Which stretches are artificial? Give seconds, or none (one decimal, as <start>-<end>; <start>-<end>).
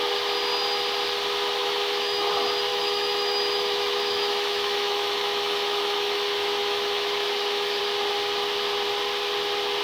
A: 1.6-2.3; 2.7-7.8